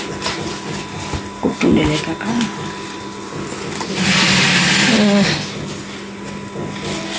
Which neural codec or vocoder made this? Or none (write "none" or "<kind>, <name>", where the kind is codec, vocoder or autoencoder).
none